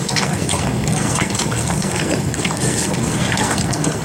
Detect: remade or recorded remade